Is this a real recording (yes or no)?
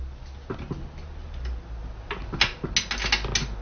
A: yes